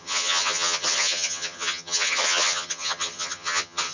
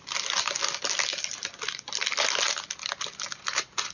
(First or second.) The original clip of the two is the second